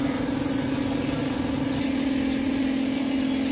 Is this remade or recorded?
recorded